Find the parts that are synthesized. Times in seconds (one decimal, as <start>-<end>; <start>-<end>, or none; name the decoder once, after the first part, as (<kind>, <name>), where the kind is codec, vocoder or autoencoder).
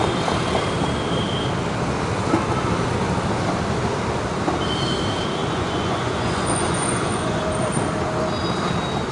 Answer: 5.4-7.4 (vocoder, Vocos)